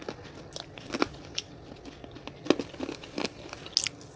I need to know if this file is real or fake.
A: real